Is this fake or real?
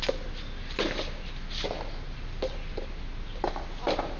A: real